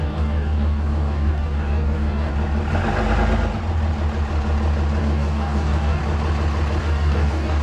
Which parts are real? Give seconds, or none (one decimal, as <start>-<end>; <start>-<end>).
2.3-5.0; 6.0-6.8